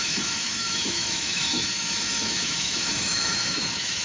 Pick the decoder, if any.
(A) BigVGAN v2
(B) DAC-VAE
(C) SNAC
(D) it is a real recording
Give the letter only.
B